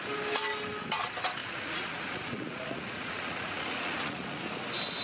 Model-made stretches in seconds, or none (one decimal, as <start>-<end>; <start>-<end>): 1.4-4.4